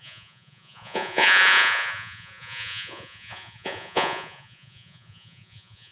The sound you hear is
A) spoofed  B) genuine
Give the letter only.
A